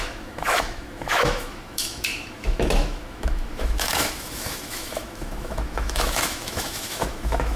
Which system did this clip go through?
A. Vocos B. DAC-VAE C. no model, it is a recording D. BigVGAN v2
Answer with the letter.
B